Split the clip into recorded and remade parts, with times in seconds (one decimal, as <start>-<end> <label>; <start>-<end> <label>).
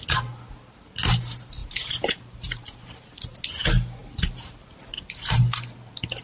0.0-1.6 recorded; 1.6-3.4 remade; 3.4-6.2 recorded